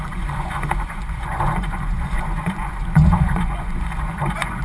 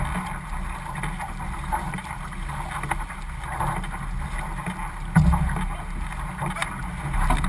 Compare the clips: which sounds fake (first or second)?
first